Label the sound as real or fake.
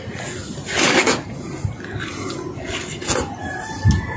real